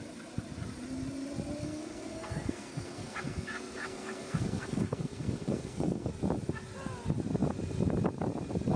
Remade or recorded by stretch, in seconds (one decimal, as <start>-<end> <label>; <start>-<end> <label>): 0.0-1.6 recorded; 1.6-6.1 remade; 6.1-8.8 recorded